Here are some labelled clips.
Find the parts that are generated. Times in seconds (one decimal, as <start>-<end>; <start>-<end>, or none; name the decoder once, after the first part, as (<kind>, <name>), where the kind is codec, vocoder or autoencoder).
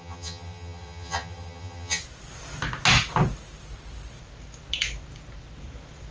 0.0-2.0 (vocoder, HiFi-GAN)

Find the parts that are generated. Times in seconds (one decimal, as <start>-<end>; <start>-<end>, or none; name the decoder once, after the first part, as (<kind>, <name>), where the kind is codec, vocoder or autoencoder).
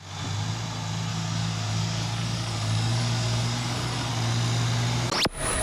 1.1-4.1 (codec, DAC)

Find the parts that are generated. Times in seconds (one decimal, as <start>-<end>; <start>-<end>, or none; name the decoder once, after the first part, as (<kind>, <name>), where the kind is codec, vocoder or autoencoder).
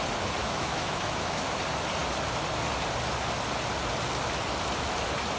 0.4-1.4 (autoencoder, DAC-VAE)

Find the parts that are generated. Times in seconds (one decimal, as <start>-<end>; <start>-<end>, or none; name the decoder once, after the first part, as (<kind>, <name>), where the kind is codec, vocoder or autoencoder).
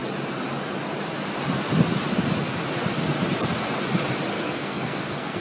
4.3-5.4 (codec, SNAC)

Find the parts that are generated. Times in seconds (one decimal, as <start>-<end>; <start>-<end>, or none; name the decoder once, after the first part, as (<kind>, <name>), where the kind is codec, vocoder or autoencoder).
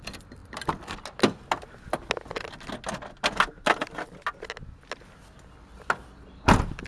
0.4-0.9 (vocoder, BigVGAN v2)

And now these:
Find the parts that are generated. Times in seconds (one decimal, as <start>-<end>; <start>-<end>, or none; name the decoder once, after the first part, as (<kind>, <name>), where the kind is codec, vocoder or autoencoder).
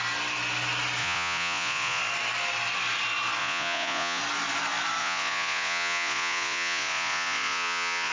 1.0-2.0 (vocoder, Vocos); 3.4-4.2; 5.0-8.1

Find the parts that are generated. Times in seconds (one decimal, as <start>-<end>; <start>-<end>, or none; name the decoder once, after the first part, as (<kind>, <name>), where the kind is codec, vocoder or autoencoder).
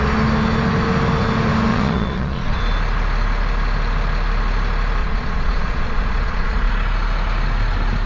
1.7-2.6 (vocoder, Vocos); 5.0-6.7